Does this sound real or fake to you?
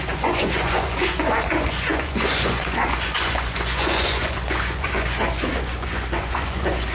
fake